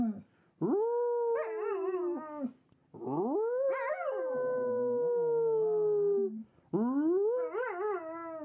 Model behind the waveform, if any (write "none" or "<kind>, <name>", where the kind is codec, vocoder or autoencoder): none